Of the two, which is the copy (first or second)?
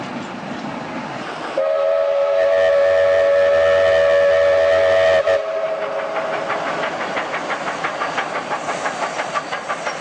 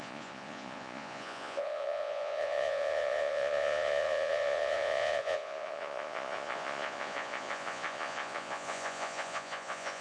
second